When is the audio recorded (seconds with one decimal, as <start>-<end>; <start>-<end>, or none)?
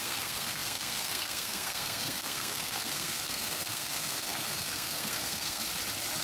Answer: 5.6-6.2